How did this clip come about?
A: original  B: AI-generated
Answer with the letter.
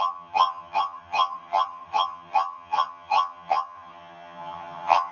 B